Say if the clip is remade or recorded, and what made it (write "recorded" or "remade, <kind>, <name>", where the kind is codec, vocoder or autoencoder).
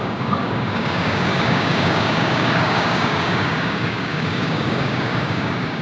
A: remade, codec, DAC